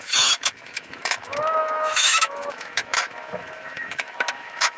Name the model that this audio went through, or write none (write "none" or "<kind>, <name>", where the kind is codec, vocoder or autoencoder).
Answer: autoencoder, DAC-VAE